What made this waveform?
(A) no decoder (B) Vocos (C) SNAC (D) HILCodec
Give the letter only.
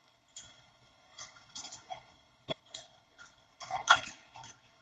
D